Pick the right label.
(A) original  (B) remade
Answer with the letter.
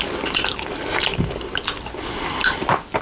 A